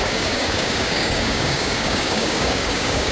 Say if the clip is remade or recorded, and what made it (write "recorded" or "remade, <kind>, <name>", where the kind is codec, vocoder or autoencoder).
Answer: remade, codec, DAC